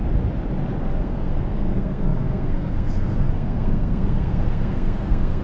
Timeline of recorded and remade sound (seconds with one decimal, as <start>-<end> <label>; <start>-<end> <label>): 0.0-1.0 recorded; 1.0-5.4 remade